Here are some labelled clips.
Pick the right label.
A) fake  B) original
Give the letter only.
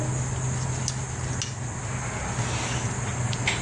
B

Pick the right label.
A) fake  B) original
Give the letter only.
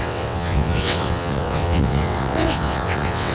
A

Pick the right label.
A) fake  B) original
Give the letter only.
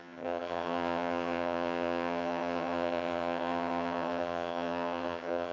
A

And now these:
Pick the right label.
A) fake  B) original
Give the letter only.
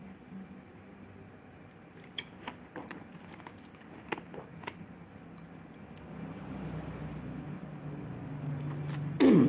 B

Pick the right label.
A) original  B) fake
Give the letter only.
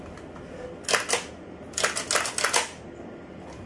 A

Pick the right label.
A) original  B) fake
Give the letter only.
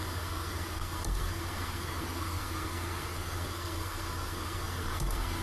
B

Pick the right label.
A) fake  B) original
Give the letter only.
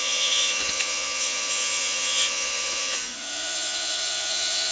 A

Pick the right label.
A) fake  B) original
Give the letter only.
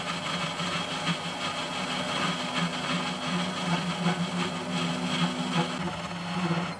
B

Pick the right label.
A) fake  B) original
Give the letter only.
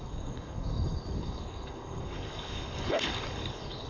A